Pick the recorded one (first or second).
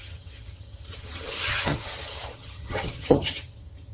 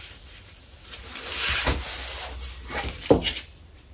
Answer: second